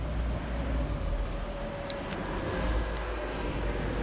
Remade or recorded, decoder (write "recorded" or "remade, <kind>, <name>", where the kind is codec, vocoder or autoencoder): recorded